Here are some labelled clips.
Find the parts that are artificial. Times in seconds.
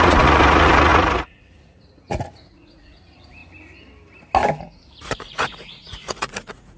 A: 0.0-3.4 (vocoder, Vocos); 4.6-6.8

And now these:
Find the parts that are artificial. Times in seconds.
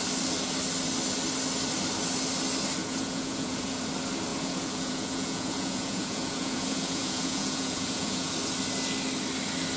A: 2.8-3.8 (vocoder, Vocos); 4.3-8.3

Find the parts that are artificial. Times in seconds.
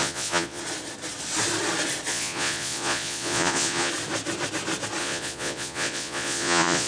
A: 0.0-0.6 (vocoder, Vocos); 2.1-3.9; 5.0-6.9